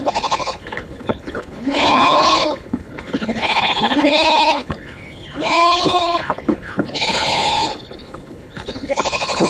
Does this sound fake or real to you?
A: fake